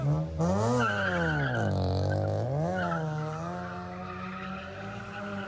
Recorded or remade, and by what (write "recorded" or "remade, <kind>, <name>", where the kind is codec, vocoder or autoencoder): recorded